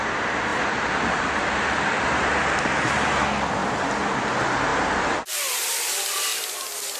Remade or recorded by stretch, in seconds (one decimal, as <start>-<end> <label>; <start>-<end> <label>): 0.0-0.5 recorded; 0.5-2.4 remade; 2.4-6.3 recorded; 6.3-7.0 remade